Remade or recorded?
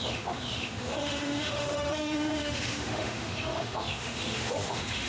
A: remade